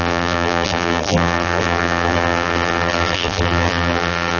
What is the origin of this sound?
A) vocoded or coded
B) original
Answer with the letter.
A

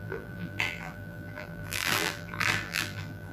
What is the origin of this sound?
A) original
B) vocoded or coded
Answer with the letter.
B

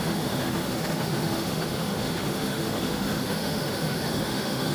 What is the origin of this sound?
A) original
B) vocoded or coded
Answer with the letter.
B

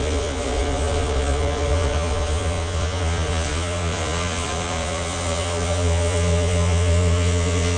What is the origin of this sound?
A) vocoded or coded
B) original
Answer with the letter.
A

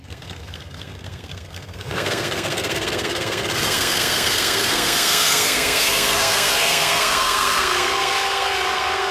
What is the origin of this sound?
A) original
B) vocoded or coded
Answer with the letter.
B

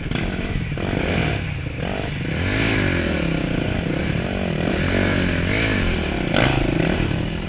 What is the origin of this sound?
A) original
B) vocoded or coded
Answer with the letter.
A